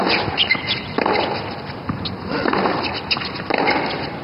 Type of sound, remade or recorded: recorded